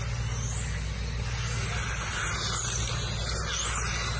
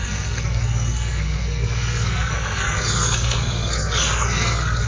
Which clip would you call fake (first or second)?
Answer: second